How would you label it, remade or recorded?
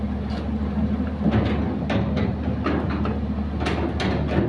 recorded